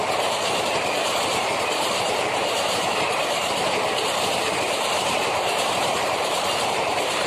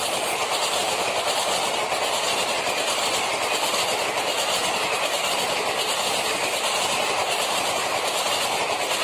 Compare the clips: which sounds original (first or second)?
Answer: second